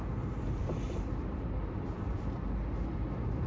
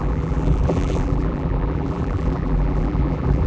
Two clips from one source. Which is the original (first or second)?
first